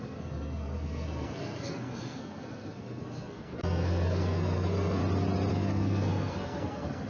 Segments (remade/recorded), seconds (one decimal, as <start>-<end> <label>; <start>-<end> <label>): 0.0-5.0 remade; 5.0-5.5 recorded; 5.5-7.1 remade